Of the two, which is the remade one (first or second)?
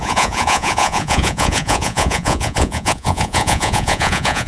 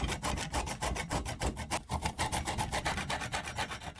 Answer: first